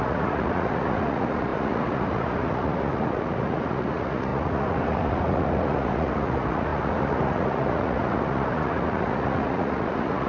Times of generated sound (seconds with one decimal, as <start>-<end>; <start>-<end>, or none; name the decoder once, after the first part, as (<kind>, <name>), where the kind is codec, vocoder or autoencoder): 0.0-10.3 (vocoder, Vocos)